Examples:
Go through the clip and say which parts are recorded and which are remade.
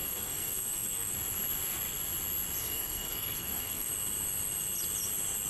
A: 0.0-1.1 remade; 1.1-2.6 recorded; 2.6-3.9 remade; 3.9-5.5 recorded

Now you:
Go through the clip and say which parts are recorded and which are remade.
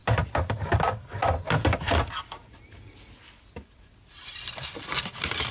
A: 0.0-5.5 recorded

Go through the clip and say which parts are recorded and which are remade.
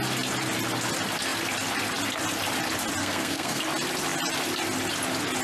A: 0.0-3.0 recorded; 3.0-3.6 remade; 3.6-5.4 recorded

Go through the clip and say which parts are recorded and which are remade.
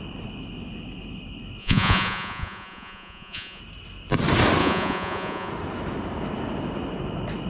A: 0.0-1.6 recorded; 1.6-3.6 remade; 3.6-4.6 recorded; 4.6-5.5 remade; 5.5-7.5 recorded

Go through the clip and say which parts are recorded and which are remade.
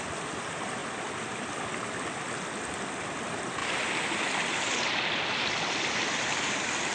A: 0.0-6.9 recorded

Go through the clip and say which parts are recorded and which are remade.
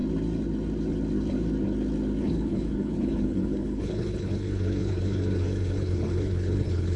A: 0.0-2.2 recorded; 2.2-7.0 remade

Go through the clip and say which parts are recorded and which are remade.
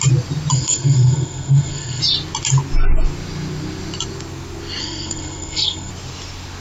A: 0.0-0.5 recorded; 0.5-2.0 remade; 2.0-4.8 recorded; 4.8-5.9 remade; 5.9-6.6 recorded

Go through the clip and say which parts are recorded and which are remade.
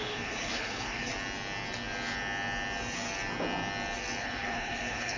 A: 0.0-1.1 remade; 1.1-4.2 recorded; 4.2-5.2 remade